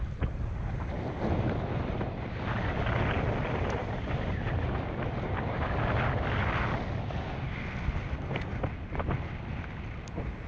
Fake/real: real